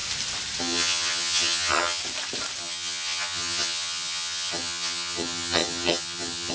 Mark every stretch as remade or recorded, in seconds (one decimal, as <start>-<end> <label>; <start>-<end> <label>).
0.0-0.6 recorded; 0.6-2.0 remade; 2.0-2.6 recorded; 2.6-6.5 remade